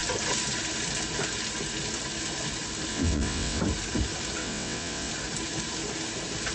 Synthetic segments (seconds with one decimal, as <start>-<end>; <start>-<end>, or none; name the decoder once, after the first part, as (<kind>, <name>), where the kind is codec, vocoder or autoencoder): 2.9-3.6 (vocoder, WaveNeXt); 4.4-5.1